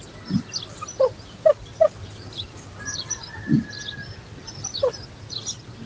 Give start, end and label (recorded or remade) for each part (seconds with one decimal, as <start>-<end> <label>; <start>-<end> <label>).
0.0-5.9 recorded